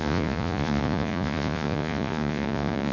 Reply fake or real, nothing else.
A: fake